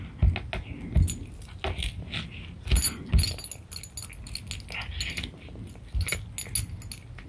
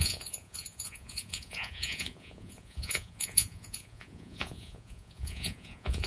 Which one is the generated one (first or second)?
second